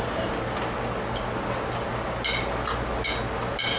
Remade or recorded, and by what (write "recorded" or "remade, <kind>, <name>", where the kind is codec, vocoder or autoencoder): recorded